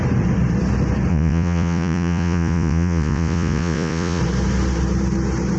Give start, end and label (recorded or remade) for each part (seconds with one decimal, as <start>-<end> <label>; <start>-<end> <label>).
0.0-1.1 recorded; 1.1-4.2 remade; 4.2-5.6 recorded